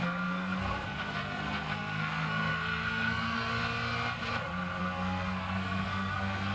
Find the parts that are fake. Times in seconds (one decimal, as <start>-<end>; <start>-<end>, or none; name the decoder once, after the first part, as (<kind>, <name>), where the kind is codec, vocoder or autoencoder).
0.0-3.5 (codec, SNAC); 4.8-6.5